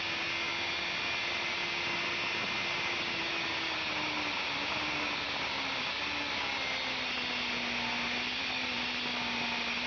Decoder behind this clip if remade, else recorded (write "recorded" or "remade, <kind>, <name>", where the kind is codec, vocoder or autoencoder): recorded